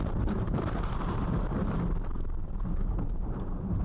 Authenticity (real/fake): fake